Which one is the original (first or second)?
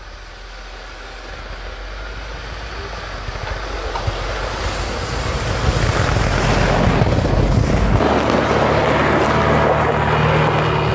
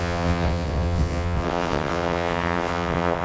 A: first